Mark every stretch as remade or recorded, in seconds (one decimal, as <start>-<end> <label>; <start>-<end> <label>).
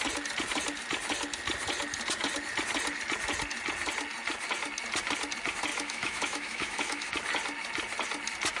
0.0-5.7 recorded; 5.7-7.1 remade; 7.1-8.6 recorded